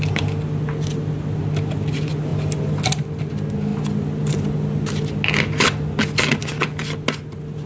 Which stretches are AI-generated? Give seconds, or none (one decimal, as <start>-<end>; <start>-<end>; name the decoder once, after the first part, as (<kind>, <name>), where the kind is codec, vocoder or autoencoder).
none